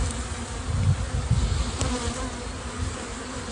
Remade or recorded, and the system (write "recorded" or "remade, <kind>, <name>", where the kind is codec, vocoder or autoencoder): recorded